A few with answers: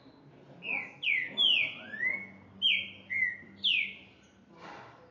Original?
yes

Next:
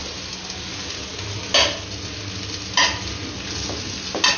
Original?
yes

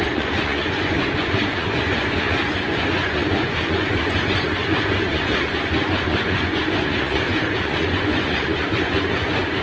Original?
no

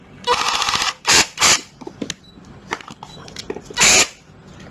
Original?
yes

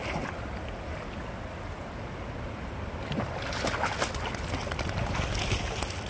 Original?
yes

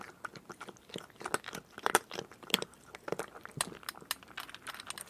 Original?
yes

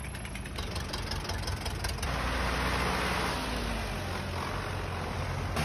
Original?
yes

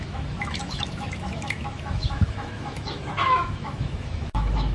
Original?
no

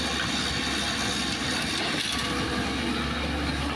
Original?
yes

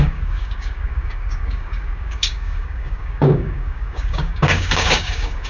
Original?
no